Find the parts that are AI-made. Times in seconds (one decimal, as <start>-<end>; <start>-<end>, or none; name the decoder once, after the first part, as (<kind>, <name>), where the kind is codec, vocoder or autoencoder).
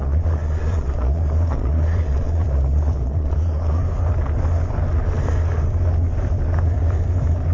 0.0-3.8 (vocoder, Vocos)